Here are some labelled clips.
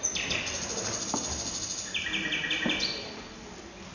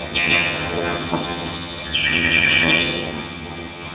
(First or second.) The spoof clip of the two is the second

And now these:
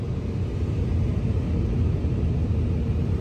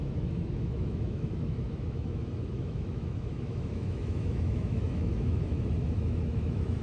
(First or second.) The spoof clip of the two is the second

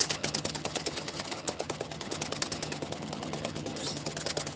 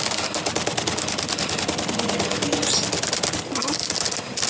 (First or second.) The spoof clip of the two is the first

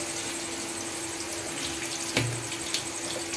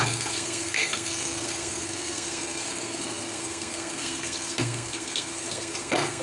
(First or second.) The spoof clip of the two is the second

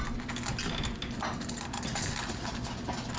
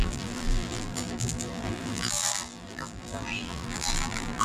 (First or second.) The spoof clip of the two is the second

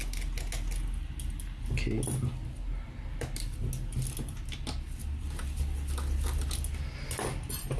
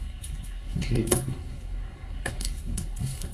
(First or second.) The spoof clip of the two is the second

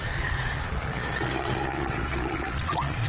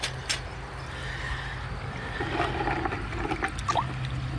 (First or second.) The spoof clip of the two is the first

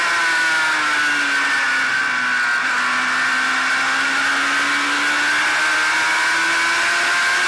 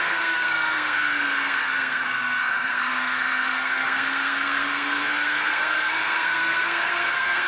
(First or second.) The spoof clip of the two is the second